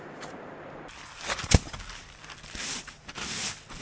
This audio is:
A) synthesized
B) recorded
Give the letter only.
B